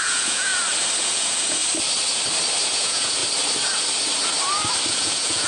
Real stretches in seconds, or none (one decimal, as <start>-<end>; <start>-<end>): 0.5-1.0; 1.6-2.6; 3.2-4.9

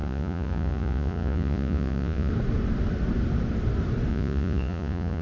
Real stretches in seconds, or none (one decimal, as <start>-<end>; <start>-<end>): 2.3-4.1

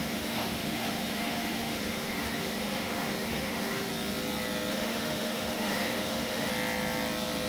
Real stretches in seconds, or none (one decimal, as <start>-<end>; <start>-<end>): 3.9-4.7; 6.5-7.5

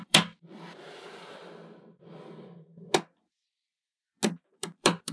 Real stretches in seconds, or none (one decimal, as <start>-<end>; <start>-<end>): 1.4-4.5

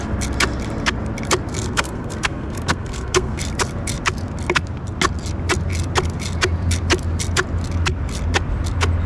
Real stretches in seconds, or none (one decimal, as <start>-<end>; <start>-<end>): 0.0-1.5; 3.4-9.1

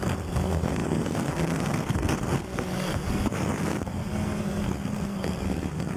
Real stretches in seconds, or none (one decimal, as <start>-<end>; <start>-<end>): none